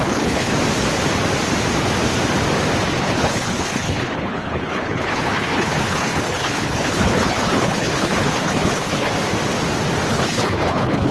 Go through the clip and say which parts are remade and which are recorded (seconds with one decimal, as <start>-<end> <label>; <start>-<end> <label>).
0.0-0.5 remade; 0.5-3.0 recorded; 3.0-9.1 remade; 9.1-10.1 recorded; 10.1-11.1 remade